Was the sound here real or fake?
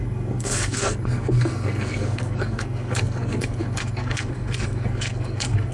fake